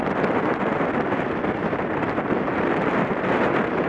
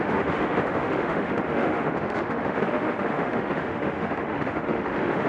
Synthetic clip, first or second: second